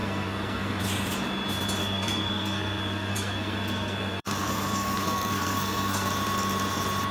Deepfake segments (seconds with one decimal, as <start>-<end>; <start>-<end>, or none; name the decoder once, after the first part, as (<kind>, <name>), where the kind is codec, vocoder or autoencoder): 0.0-0.8 (codec, SNAC); 1.8-6.1